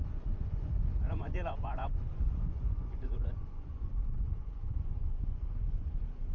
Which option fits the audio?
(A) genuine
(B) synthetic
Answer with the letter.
B